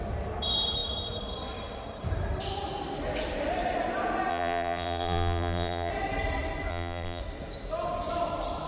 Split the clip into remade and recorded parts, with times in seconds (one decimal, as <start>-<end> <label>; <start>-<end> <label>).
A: 0.0-4.3 recorded; 4.3-5.9 remade; 5.9-6.7 recorded; 6.7-7.2 remade; 7.2-8.7 recorded